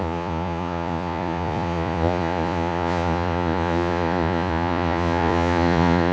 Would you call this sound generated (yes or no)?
yes